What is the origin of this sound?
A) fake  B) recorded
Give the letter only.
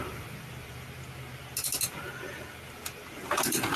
B